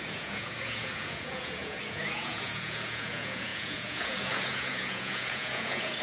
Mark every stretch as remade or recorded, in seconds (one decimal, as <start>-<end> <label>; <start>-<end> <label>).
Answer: 0.0-6.0 remade